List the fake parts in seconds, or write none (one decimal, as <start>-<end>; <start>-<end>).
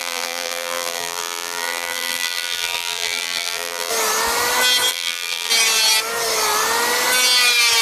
0.0-3.9; 4.9-5.5